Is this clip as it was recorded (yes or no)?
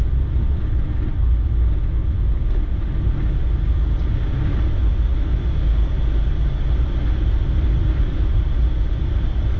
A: yes